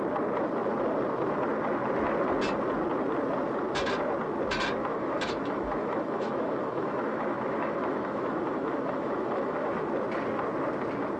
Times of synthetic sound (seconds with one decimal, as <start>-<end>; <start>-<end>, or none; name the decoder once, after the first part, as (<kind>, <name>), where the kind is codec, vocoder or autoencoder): 4.9-9.8 (autoencoder, DAC-VAE)